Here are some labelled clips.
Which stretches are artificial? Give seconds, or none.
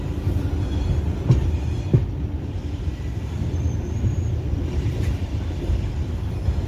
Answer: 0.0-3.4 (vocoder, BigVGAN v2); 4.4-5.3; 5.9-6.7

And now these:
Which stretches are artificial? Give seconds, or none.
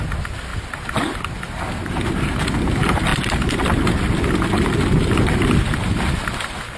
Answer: none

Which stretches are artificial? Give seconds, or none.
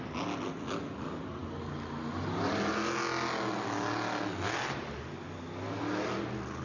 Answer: none